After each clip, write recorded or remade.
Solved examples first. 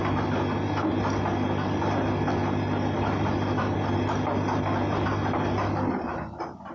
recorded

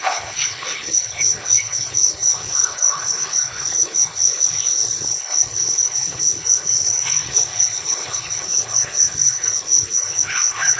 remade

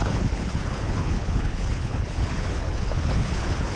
remade